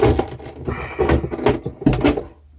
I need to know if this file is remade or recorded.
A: recorded